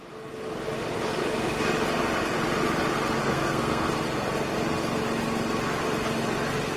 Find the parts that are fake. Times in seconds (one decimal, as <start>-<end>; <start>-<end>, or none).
3.2-3.9